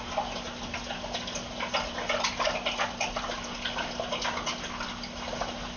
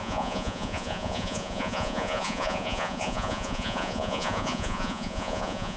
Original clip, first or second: first